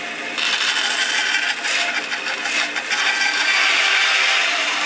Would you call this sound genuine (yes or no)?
yes